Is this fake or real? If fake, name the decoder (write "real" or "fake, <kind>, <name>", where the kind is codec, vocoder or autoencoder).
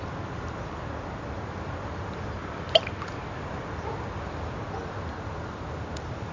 real